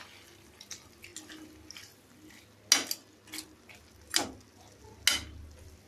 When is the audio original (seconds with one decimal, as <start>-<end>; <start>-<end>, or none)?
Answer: 0.0-5.9